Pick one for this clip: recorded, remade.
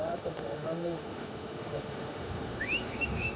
remade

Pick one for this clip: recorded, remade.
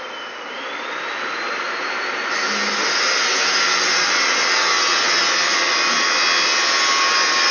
recorded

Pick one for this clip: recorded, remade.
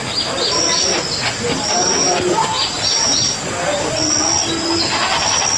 recorded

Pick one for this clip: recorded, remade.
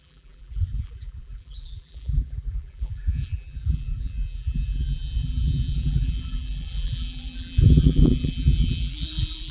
remade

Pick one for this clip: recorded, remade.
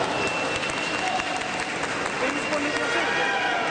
recorded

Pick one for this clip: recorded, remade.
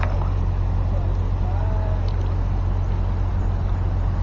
recorded